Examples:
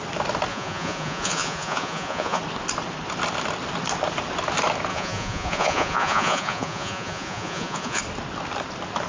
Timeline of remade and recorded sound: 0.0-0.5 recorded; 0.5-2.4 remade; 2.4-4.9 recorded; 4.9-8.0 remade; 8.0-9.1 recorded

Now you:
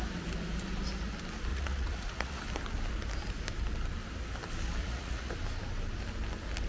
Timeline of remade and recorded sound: 0.0-1.5 recorded; 1.5-2.4 remade; 2.4-4.8 recorded; 4.8-5.3 remade; 5.3-6.7 recorded

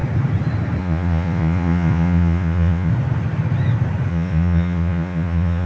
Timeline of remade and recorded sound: 0.0-0.8 recorded; 0.8-2.9 remade; 2.9-4.1 recorded; 4.1-5.7 remade

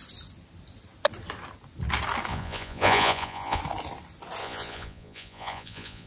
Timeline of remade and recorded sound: 0.0-2.3 recorded; 2.3-3.6 remade; 3.6-4.4 recorded; 4.4-6.1 remade

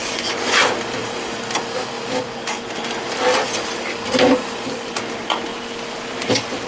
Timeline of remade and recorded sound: 0.0-0.6 remade; 0.6-6.7 recorded

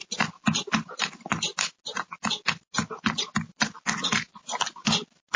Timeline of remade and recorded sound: 0.0-5.4 recorded